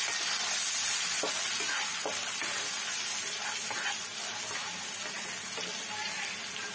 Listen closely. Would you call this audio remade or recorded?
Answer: recorded